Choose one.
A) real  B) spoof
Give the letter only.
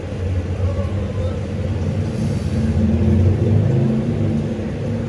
A